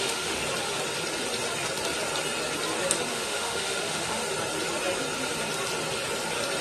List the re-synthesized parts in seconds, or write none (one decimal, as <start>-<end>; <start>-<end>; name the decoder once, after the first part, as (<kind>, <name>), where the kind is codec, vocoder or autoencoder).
0.0-0.4 (autoencoder, DAC-VAE); 3.1-4.2